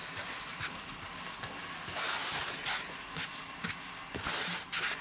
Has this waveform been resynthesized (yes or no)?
no